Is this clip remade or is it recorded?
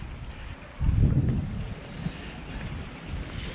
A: recorded